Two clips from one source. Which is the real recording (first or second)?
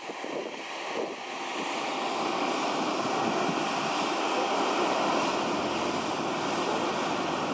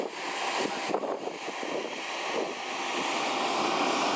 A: second